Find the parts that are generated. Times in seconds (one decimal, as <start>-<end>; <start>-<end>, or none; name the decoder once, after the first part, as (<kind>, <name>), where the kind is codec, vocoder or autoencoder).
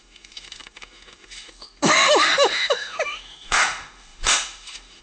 0.0-5.0 (autoencoder, DAC-VAE)